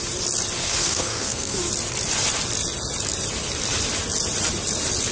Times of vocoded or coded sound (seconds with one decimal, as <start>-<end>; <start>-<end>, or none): 0.6-1.7